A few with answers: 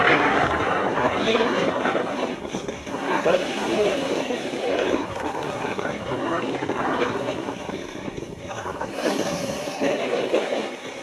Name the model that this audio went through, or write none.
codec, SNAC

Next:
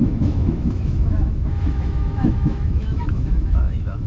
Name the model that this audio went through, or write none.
autoencoder, DAC-VAE